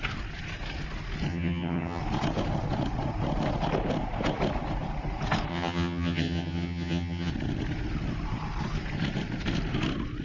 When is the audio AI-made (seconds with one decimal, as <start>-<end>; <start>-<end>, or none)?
1.3-2.0; 5.5-7.3